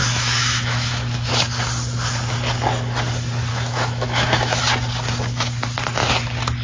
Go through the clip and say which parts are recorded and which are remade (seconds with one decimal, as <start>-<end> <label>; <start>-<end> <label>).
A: 0.0-1.3 remade; 1.3-3.5 recorded; 3.5-4.6 remade; 4.6-6.6 recorded